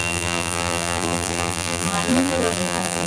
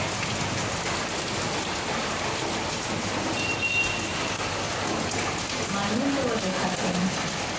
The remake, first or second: first